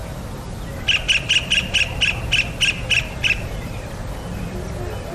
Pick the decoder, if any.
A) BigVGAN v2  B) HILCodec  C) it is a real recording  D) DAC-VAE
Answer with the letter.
C